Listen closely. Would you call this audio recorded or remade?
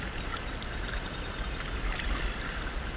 recorded